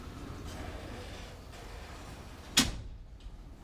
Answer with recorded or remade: recorded